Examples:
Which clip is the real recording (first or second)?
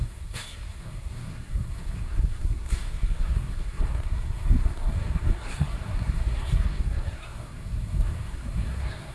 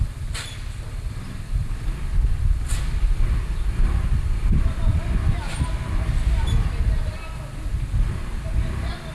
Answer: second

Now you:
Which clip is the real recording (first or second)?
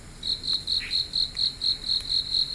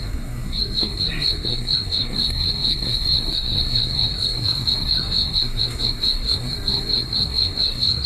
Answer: first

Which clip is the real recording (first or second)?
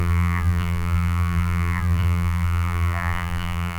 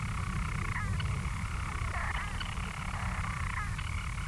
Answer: second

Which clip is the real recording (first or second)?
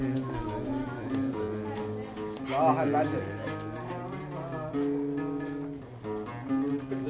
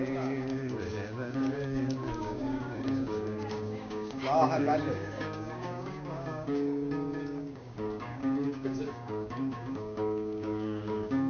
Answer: first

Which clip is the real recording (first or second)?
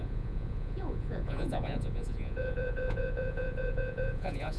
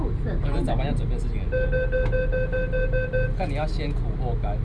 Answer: second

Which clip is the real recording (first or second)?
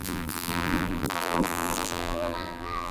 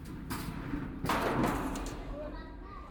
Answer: second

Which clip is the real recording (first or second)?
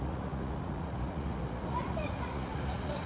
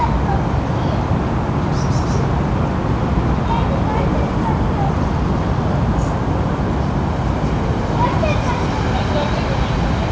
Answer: second